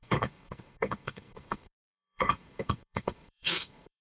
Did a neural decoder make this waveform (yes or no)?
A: yes